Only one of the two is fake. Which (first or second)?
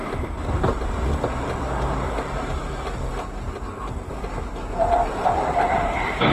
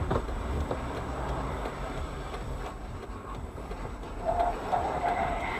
second